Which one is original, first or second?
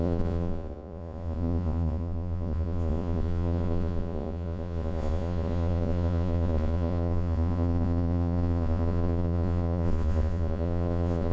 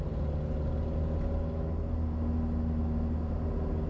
second